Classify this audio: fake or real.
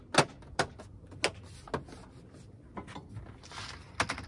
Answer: real